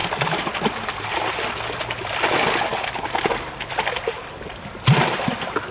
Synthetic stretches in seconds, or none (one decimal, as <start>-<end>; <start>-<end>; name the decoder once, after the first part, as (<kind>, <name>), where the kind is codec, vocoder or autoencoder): none